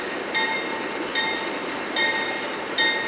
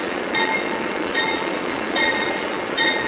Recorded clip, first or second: first